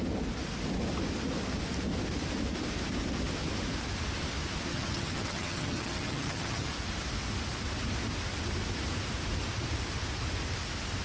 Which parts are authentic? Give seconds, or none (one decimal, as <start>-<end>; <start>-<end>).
0.0-4.7; 6.7-11.0